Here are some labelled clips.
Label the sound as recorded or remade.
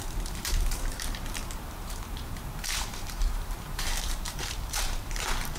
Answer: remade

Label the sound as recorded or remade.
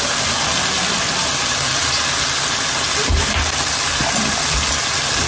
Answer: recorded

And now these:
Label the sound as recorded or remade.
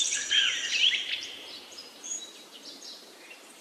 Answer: remade